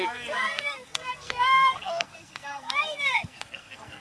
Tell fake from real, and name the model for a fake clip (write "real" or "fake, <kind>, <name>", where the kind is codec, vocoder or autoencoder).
fake, codec, SNAC